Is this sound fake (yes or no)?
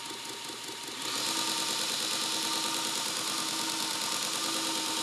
no